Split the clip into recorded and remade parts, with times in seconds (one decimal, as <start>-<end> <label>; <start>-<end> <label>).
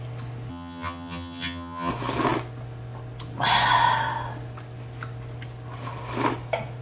0.0-0.5 recorded; 0.5-1.9 remade; 1.9-6.8 recorded